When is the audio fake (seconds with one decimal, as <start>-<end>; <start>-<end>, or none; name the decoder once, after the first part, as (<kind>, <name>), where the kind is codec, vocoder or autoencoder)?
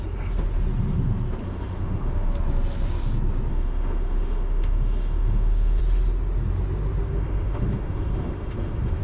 1.4-2.3 (autoencoder, DAC-VAE); 3.5-5.8; 7.1-9.0